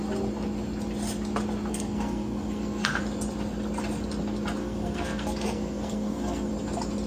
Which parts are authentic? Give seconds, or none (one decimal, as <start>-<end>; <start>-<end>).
0.0-1.7; 3.0-4.6; 6.5-7.1